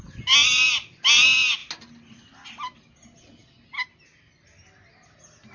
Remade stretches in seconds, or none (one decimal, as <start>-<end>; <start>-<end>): none